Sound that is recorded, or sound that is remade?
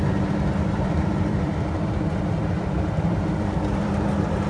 remade